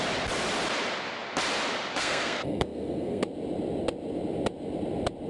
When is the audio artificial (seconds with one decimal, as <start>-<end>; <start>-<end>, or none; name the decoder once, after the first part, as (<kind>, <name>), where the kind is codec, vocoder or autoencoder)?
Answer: 2.0-3.2 (codec, SNAC)